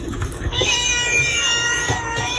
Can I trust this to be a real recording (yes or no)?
no